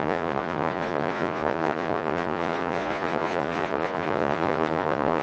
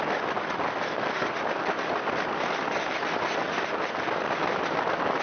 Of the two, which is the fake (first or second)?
first